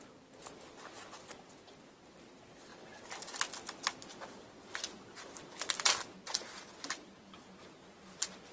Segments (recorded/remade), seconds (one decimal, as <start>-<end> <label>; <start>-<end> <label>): 0.0-8.5 recorded